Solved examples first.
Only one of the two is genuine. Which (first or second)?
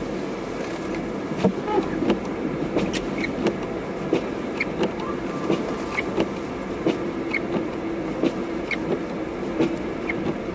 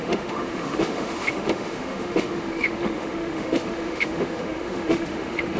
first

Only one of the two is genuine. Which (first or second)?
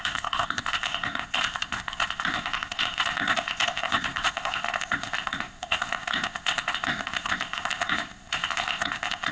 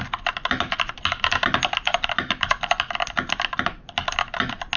second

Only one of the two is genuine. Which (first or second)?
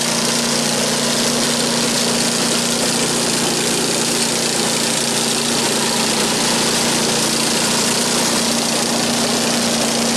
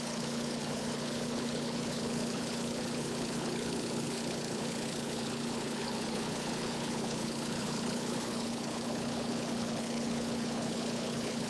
first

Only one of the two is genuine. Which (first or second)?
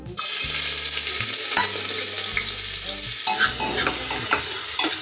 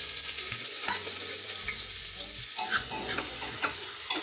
first